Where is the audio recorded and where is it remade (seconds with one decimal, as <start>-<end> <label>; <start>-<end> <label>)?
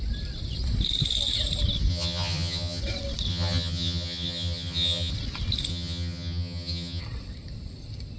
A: 0.0-1.9 recorded; 1.9-2.8 remade; 2.8-3.3 recorded; 3.3-5.1 remade; 5.1-5.7 recorded; 5.7-7.0 remade; 7.0-8.2 recorded